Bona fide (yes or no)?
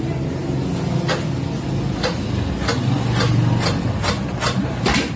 yes